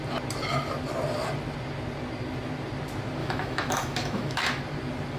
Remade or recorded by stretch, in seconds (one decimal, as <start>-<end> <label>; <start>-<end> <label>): 0.0-3.2 recorded; 3.2-4.6 remade; 4.6-5.2 recorded